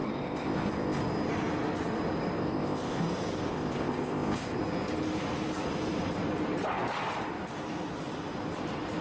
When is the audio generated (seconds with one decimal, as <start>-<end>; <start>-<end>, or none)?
0.0-1.0; 2.4-3.0; 3.5-4.6